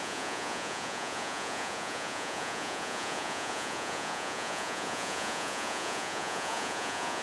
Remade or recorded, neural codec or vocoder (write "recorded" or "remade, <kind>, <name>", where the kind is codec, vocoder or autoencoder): remade, vocoder, Vocos